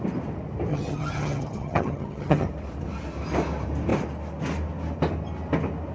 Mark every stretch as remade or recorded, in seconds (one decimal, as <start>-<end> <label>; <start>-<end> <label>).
0.0-0.7 recorded; 0.7-2.5 remade; 2.5-5.9 recorded